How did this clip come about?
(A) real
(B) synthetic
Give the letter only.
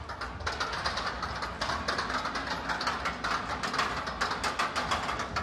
A